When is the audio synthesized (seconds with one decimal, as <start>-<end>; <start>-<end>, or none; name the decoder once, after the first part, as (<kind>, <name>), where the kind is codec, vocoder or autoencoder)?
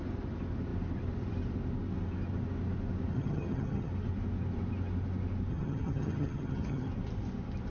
3.1-3.9 (vocoder, HiFi-GAN); 5.5-6.9